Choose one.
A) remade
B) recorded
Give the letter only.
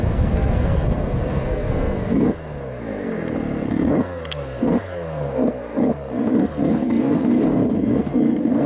A